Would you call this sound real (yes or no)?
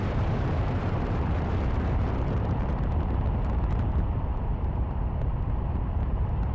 no